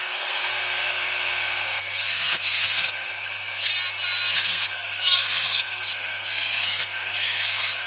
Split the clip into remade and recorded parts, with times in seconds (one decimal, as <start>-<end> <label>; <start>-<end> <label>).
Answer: 0.0-3.7 remade; 3.7-4.3 recorded; 4.3-7.9 remade